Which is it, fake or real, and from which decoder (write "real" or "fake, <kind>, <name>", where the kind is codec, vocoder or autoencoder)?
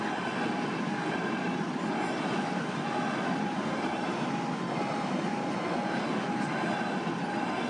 real